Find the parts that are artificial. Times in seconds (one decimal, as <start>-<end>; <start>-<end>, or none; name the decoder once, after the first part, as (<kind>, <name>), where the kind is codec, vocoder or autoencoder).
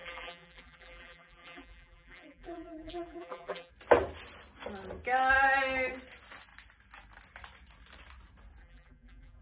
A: 0.0-3.7 (vocoder, BigVGAN v2); 8.6-9.4